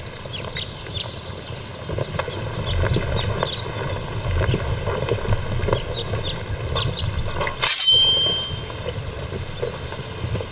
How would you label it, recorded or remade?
recorded